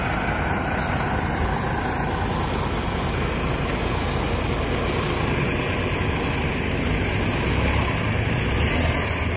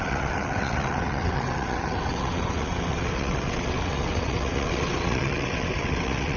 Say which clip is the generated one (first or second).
second